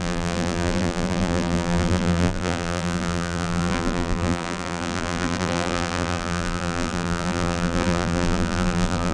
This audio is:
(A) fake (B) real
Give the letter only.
A